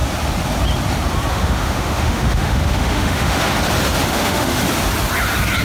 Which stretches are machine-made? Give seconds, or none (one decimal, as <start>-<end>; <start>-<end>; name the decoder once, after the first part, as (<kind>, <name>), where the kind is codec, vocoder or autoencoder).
1.3-3.5 (autoencoder, DAC-VAE); 4.1-4.6